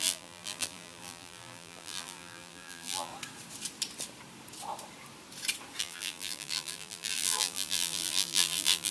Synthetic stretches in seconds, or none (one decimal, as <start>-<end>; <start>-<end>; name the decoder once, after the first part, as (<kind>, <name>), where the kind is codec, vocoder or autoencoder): 0.0-3.1 (vocoder, BigVGAN v2); 5.8-8.9